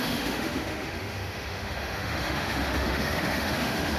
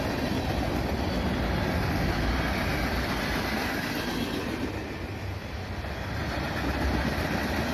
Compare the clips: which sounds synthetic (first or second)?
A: first